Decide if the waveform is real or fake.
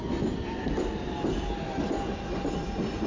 real